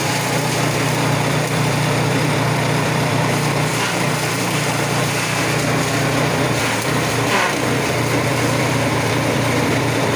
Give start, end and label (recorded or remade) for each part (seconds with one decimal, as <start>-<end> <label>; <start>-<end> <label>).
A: 0.0-10.2 remade